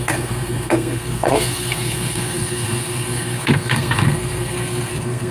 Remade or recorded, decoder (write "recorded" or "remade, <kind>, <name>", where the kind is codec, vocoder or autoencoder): remade, codec, SNAC